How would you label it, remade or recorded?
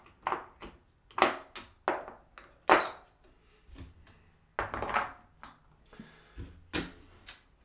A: recorded